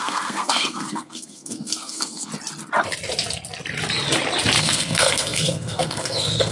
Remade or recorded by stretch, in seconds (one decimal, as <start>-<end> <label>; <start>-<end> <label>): 0.0-2.3 remade; 2.3-4.6 recorded; 4.6-6.5 remade

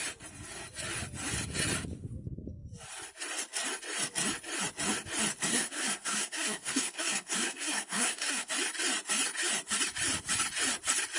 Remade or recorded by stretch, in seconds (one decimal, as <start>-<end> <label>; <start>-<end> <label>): 0.0-5.5 recorded; 5.5-8.5 remade; 8.5-11.2 recorded

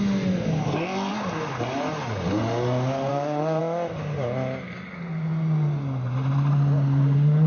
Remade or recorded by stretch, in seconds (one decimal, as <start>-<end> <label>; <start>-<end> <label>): 0.0-3.1 recorded; 3.1-3.6 remade; 3.6-7.5 recorded

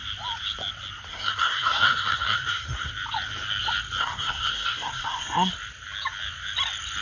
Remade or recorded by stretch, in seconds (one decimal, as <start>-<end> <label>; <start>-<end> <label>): 0.0-1.1 recorded; 1.1-2.9 remade; 2.9-4.0 recorded; 4.0-5.5 remade; 5.5-7.0 recorded

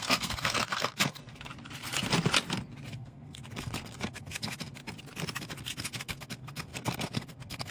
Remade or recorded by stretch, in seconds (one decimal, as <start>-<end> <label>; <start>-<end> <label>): 0.0-1.5 remade; 1.5-2.9 recorded; 2.9-4.8 remade; 4.8-5.4 recorded; 5.4-7.7 remade

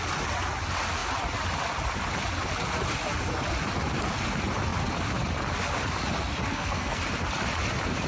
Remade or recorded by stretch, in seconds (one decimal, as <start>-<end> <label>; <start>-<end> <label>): 0.0-6.5 recorded; 6.5-7.0 remade; 7.0-8.1 recorded

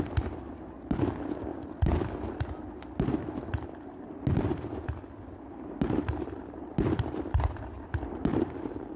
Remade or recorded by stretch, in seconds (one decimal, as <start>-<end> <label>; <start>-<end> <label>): 0.0-9.0 recorded